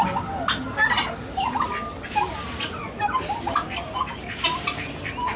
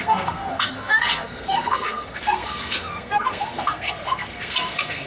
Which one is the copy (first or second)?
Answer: second